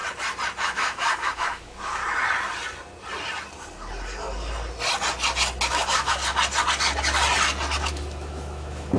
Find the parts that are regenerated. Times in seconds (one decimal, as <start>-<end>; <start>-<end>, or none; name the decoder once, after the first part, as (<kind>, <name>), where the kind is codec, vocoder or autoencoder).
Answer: 0.6-2.0 (autoencoder, DAC-VAE); 5.7-6.2; 7.9-9.0